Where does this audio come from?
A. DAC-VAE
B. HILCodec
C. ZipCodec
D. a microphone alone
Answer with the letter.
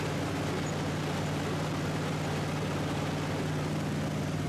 D